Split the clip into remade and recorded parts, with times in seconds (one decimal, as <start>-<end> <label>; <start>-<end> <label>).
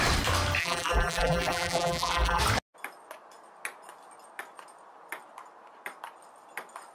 0.0-0.6 recorded; 0.6-2.4 remade; 2.4-6.9 recorded